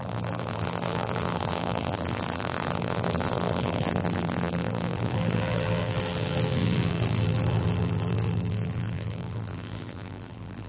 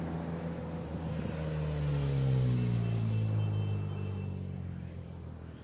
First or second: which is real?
second